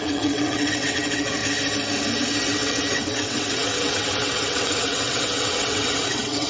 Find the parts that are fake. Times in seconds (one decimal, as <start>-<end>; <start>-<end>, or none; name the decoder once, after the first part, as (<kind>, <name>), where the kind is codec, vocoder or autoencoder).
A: 0.0-1.4 (vocoder, WaveNeXt); 2.4-6.5